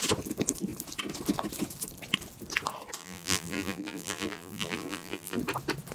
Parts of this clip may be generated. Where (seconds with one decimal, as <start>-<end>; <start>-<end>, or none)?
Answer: 3.0-5.4